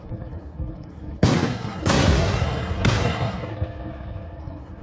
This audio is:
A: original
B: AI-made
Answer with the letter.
B